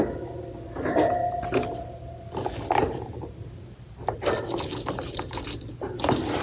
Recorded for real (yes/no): yes